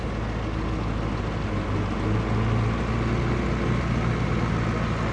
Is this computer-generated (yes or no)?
no